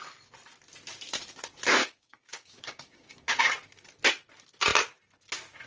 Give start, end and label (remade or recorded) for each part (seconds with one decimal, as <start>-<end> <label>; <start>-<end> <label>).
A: 0.0-1.8 recorded; 1.8-3.5 remade; 3.5-5.7 recorded